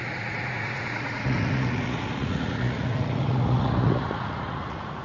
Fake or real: fake